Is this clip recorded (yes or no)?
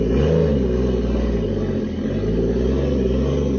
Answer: yes